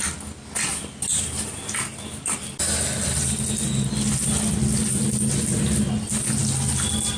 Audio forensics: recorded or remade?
recorded